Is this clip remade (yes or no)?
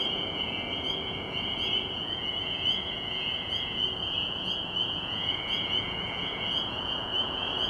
yes